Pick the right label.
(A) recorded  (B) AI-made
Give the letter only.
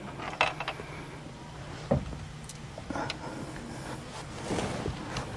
A